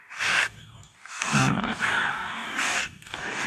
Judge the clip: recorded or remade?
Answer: remade